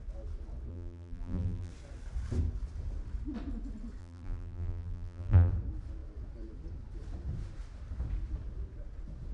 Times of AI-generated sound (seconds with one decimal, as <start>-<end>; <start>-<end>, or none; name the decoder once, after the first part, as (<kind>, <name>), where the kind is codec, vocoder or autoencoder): 0.7-1.7 (vocoder, BigVGAN v2); 4.0-5.5